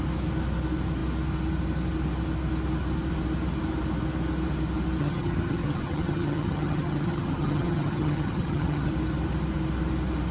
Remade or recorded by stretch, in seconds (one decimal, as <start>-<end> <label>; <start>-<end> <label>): 0.0-5.0 recorded; 5.0-8.9 remade; 8.9-10.3 recorded